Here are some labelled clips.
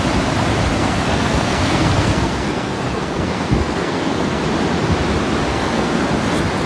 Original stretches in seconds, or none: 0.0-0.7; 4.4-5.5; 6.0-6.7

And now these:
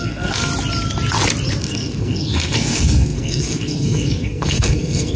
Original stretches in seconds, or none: 0.5-1.6

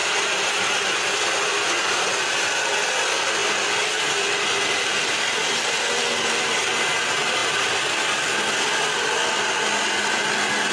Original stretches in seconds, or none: 0.6-10.7

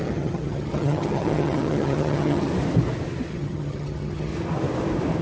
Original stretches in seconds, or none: 2.5-3.3; 4.3-5.2

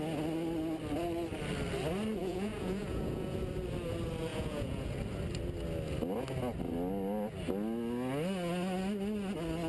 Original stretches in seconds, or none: 0.0-2.2; 3.4-4.3; 4.9-9.7

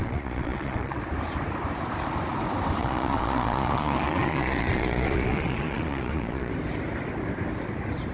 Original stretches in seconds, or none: 1.0-2.8; 6.5-8.1

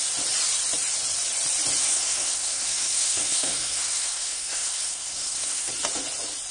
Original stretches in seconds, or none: 0.0-1.8; 5.7-6.5

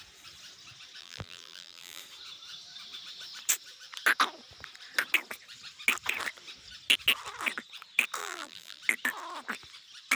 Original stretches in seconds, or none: 0.0-1.0; 2.0-8.2; 8.8-10.2